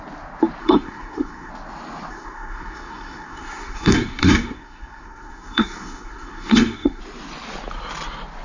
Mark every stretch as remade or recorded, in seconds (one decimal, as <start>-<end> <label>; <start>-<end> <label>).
0.0-0.6 recorded; 0.6-1.5 remade; 1.5-2.1 recorded; 2.1-7.0 remade; 7.0-8.4 recorded